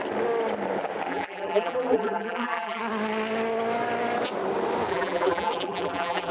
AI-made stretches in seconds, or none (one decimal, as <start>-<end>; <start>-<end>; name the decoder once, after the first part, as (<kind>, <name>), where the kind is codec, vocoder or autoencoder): 1.1-2.8 (vocoder, BigVGAN v2); 4.9-6.3